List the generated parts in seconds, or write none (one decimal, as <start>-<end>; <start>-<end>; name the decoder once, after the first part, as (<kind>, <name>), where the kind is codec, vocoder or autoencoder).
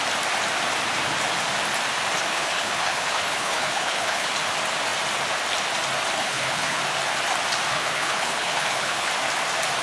2.3-4.3 (codec, HILCodec); 6.2-6.8; 7.7-9.1